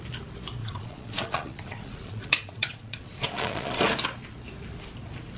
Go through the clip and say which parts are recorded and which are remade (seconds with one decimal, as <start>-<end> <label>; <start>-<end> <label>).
0.0-0.6 recorded; 0.6-3.8 remade; 3.8-5.4 recorded